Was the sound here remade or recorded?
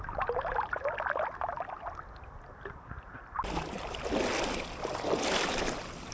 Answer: recorded